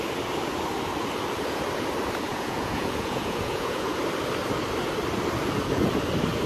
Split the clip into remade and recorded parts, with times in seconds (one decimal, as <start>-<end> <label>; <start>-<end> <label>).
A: 0.0-2.3 recorded; 2.3-4.0 remade; 4.0-6.5 recorded

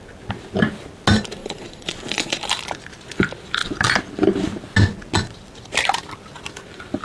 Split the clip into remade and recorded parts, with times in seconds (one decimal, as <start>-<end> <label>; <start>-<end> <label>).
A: 0.0-1.4 recorded; 1.4-2.4 remade; 2.4-7.0 recorded

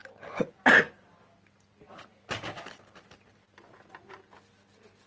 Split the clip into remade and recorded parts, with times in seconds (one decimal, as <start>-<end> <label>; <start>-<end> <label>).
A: 0.0-5.1 recorded

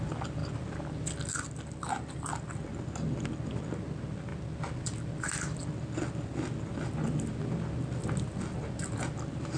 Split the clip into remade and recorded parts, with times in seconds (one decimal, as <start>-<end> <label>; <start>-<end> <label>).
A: 0.0-9.6 recorded

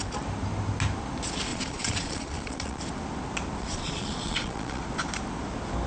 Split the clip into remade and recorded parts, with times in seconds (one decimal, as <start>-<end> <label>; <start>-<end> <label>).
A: 0.0-1.5 recorded; 1.5-2.8 remade; 2.8-3.6 recorded; 3.6-4.8 remade; 4.8-5.9 recorded

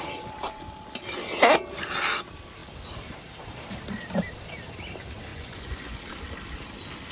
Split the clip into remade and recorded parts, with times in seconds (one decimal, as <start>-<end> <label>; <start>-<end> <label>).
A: 0.0-5.3 recorded; 5.3-6.0 remade; 6.0-7.1 recorded